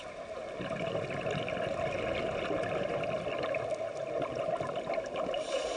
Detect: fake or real real